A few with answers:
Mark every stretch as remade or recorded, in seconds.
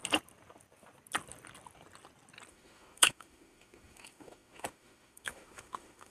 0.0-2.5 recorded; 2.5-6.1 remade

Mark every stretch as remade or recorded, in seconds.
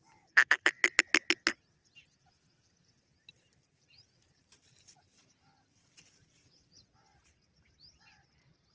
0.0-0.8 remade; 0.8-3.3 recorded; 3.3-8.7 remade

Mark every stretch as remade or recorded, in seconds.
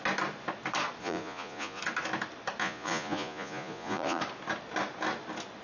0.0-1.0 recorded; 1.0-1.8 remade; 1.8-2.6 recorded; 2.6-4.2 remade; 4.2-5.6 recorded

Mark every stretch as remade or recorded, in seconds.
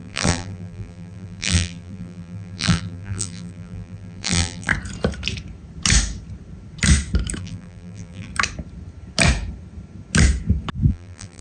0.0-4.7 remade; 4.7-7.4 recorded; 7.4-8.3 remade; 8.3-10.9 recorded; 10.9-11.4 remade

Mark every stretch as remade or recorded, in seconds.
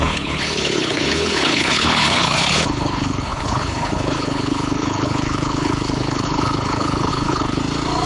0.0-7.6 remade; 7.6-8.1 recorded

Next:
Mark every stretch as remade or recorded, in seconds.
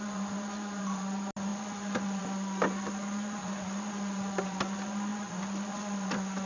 0.0-6.5 recorded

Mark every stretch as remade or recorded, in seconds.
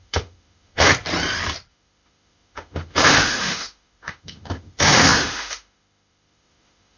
0.0-0.9 remade; 0.9-1.7 recorded; 1.7-7.0 remade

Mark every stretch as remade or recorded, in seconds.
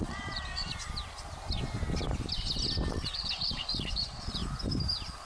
0.0-0.7 remade; 0.7-2.9 recorded; 2.9-4.4 remade; 4.4-5.3 recorded